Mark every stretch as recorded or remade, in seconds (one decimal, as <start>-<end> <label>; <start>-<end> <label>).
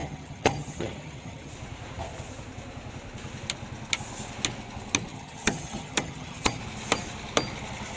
0.0-1.5 remade; 1.5-5.1 recorded; 5.1-6.6 remade; 6.6-8.0 recorded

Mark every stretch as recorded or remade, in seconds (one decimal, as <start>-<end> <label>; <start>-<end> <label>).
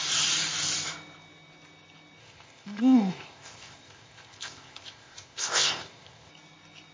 0.0-2.2 recorded; 2.2-6.3 remade; 6.3-6.9 recorded